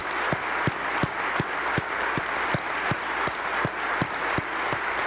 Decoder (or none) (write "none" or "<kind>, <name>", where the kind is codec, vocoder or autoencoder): none